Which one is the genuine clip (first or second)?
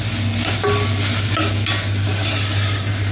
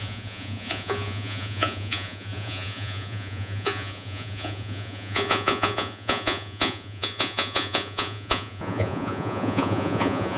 first